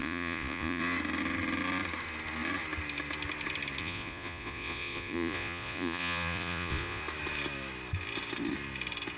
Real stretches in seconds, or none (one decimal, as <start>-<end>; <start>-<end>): 0.8-3.8; 7.0-9.2